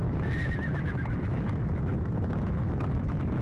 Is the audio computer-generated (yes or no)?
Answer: yes